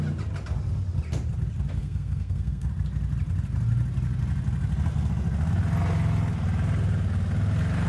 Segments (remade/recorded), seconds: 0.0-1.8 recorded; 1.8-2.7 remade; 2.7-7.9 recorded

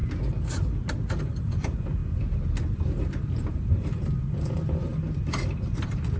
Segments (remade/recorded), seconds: 0.0-1.2 recorded; 1.2-2.0 remade; 2.0-2.7 recorded; 2.7-4.9 remade; 4.9-5.8 recorded; 5.8-6.2 remade

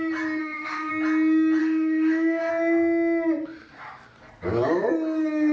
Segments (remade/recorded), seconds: 0.0-0.4 recorded; 0.4-0.9 remade; 0.9-1.6 recorded; 1.6-2.5 remade; 2.5-5.5 recorded

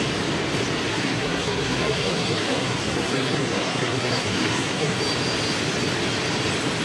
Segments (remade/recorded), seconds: 0.0-0.9 recorded; 0.9-5.0 remade; 5.0-6.8 recorded

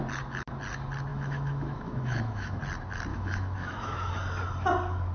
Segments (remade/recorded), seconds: 0.0-1.1 recorded; 1.1-2.6 remade; 2.6-3.1 recorded; 3.1-4.1 remade; 4.1-5.1 recorded

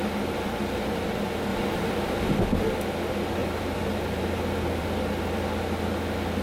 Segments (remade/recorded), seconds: 0.0-1.5 recorded; 1.5-2.3 remade; 2.3-3.4 recorded; 3.4-4.8 remade; 4.8-6.4 recorded